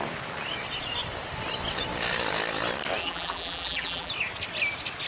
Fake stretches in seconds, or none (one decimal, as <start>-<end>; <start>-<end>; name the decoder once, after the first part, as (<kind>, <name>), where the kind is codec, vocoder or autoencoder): 3.0-4.1 (vocoder, BigVGAN v2)